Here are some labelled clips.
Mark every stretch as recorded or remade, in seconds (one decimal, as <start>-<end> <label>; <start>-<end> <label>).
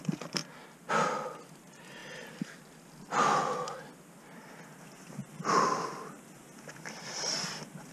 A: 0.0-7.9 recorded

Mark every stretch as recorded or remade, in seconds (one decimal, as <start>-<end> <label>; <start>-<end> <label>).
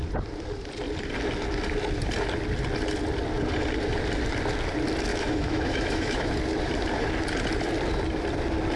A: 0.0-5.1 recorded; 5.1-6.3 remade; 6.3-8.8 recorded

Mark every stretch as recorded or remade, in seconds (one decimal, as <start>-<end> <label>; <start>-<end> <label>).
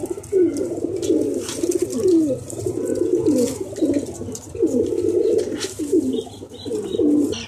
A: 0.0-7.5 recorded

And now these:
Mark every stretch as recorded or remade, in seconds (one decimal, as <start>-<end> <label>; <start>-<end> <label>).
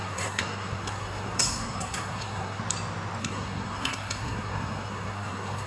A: 0.0-2.6 remade; 2.6-3.2 recorded; 3.2-5.7 remade